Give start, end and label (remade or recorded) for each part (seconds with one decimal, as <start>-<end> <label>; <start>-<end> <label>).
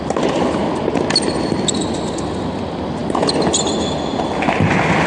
0.0-5.1 recorded